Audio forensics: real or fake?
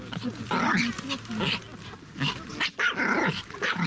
real